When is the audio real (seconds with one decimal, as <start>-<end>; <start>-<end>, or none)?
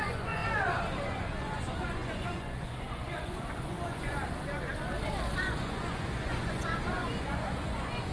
0.4-1.0; 4.2-5.4